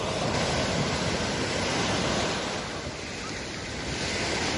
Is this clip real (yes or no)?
yes